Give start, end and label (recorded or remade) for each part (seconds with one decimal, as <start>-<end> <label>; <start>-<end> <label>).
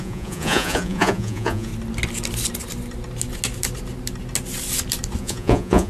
0.0-1.7 remade; 1.7-5.2 recorded; 5.2-5.9 remade